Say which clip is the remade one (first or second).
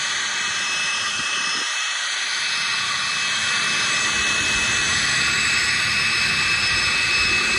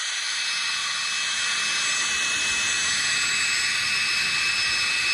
first